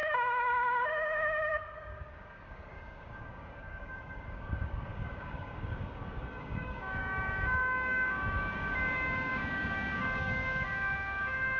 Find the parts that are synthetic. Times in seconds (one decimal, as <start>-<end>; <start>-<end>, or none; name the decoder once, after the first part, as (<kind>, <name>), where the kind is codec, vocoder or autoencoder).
0.0-11.6 (codec, DAC)